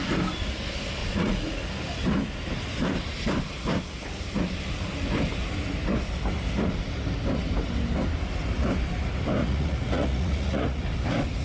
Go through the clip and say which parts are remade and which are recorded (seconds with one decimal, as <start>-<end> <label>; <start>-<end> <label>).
0.0-1.0 recorded; 1.0-1.6 remade; 1.6-9.4 recorded; 9.4-10.8 remade; 10.8-11.4 recorded